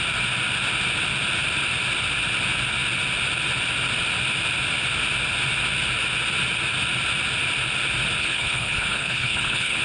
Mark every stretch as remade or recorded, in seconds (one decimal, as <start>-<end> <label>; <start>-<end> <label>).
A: 0.0-8.2 recorded; 8.2-9.8 remade